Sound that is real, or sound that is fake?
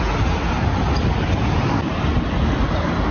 real